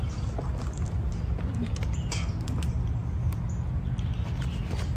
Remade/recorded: recorded